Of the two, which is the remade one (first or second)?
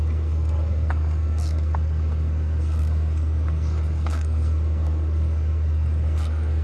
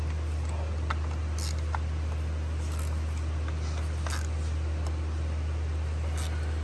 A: first